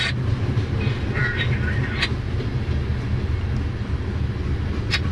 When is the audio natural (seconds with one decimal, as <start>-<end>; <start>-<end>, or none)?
0.0-5.1